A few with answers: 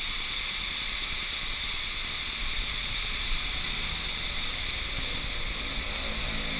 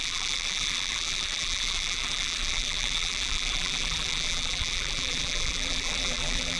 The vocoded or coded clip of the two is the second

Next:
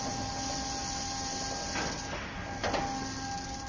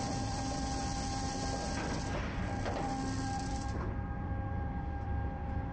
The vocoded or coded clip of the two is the second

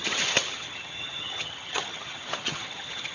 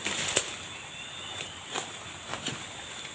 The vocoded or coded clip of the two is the first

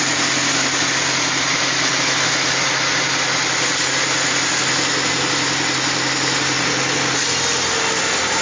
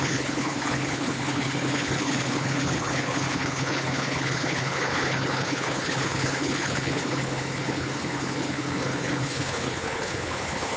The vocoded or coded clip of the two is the second